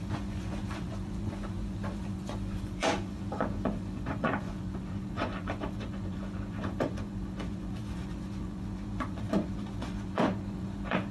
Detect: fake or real fake